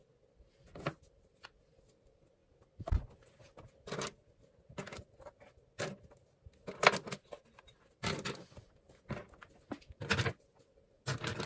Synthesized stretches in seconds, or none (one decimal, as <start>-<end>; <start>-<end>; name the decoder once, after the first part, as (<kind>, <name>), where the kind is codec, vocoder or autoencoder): none